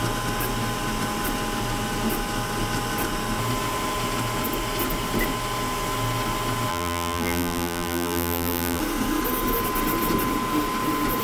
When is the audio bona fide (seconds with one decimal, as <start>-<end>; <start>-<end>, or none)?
0.0-6.7; 8.8-11.2

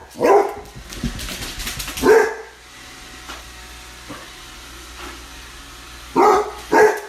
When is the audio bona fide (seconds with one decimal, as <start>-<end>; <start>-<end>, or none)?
0.0-7.1

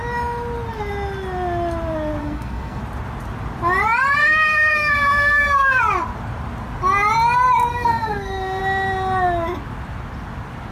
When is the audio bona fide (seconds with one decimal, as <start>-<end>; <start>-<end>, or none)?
0.0-2.2; 2.8-4.2; 5.8-7.7; 8.6-10.7